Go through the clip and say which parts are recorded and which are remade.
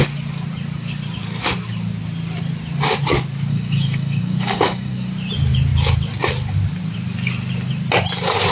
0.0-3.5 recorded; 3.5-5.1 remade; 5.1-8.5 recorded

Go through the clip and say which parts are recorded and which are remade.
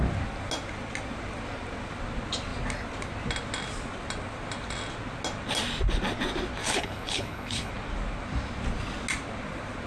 0.0-6.6 recorded; 6.6-7.7 remade; 7.7-9.9 recorded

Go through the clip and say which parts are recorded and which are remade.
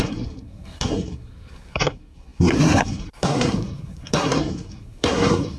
0.0-5.6 remade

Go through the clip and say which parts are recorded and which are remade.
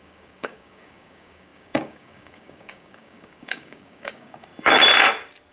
0.0-4.8 remade; 4.8-5.5 recorded